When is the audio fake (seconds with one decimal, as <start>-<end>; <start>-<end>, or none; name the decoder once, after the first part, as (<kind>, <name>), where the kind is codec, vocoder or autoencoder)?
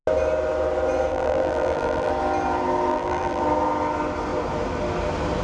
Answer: 1.1-2.1 (vocoder, BigVGAN v2); 2.9-3.4